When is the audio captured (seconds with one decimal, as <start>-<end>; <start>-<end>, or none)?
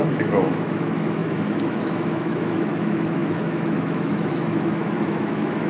none